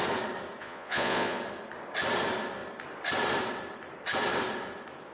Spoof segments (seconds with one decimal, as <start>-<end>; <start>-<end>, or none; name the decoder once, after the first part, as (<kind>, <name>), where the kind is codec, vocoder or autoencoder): 0.6-1.4 (vocoder, Vocos)